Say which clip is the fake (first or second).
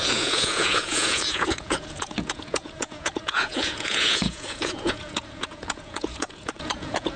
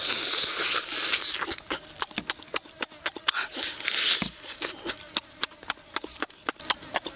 first